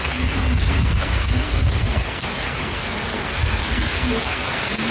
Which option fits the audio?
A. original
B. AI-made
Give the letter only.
B